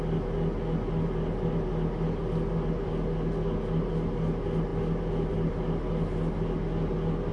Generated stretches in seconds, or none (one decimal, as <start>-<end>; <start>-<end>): none